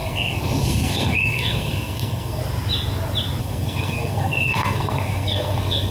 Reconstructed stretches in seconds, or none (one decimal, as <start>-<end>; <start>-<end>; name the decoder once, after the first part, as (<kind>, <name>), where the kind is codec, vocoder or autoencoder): 0.0-2.4 (codec, SNAC); 3.4-5.9